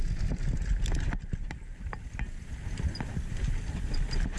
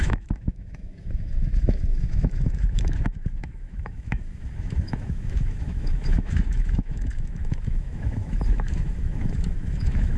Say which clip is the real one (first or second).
first